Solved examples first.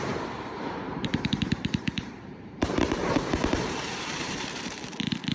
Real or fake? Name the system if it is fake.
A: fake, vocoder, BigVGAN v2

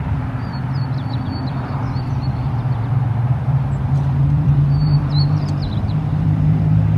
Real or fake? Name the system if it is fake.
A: fake, vocoder, BigVGAN v2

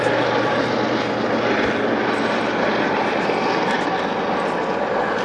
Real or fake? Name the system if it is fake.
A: real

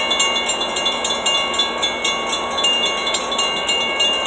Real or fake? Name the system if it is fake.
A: real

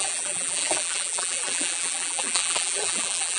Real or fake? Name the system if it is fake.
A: fake, vocoder, BigVGAN v2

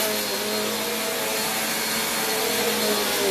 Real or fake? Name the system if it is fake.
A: real